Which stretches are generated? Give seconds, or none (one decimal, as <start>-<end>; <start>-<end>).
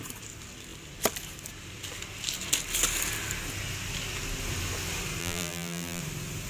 5.2-6.0